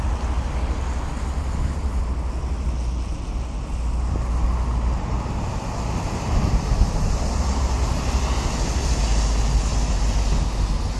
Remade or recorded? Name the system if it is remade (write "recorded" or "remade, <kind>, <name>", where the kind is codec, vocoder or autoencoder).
recorded